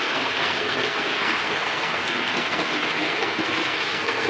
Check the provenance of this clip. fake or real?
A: fake